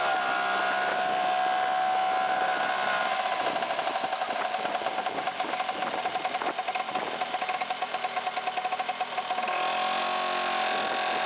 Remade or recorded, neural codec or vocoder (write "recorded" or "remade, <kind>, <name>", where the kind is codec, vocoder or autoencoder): recorded